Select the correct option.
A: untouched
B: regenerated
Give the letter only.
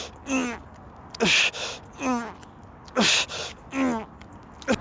A